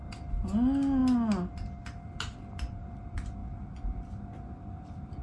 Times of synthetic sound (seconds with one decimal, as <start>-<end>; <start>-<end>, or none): none